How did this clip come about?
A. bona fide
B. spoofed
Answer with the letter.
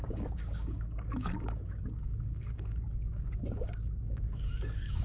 B